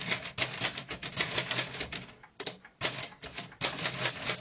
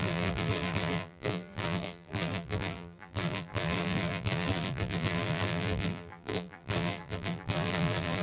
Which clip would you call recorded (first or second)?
first